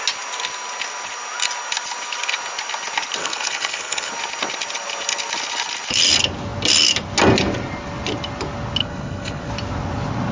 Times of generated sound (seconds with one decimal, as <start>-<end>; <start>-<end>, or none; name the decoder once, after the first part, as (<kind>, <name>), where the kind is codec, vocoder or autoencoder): 3.2-4.1 (codec, HILCodec); 8.8-9.5